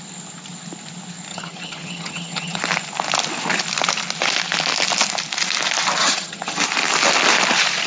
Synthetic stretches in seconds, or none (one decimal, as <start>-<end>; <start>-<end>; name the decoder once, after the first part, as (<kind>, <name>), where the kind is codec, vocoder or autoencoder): 1.3-2.6 (vocoder, HiFi-GAN); 6.0-6.6